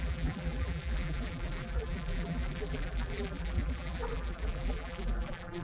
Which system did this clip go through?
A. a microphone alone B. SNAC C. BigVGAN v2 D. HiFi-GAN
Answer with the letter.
C